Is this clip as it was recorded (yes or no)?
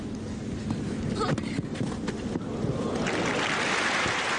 yes